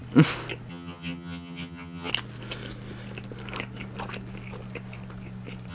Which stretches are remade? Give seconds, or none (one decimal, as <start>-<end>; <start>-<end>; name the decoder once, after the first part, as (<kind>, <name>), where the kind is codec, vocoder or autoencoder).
0.7-2.1 (vocoder, HiFi-GAN)